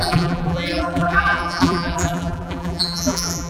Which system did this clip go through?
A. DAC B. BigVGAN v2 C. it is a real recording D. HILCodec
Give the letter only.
B